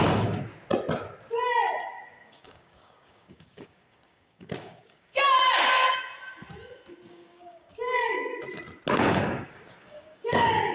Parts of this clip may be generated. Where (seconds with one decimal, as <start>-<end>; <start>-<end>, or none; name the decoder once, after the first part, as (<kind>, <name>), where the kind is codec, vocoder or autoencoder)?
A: 0.0-0.5 (codec, DAC); 2.2-5.8; 7.1-8.3; 9.0-10.7